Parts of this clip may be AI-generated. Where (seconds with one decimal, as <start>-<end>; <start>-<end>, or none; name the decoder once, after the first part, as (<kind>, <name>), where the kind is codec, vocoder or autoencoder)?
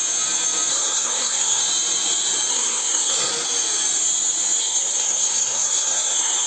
0.7-1.6 (codec, SNAC); 2.5-3.3; 4.6-6.5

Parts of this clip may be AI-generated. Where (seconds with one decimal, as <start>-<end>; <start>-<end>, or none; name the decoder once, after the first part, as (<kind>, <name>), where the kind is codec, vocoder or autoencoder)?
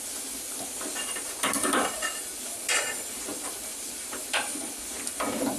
none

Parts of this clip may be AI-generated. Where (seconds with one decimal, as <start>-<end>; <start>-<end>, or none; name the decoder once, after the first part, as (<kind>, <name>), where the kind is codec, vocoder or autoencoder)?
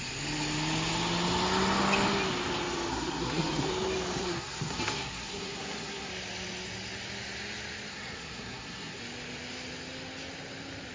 2.9-3.7 (codec, SNAC); 4.2-6.1; 7.9-9.0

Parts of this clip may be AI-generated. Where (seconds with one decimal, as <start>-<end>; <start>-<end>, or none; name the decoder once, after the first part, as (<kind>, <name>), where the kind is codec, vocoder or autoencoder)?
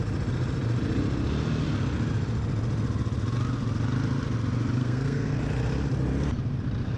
4.8-5.4 (codec, SNAC)